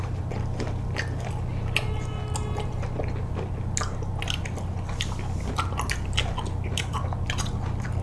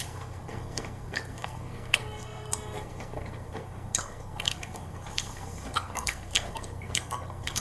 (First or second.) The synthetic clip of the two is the second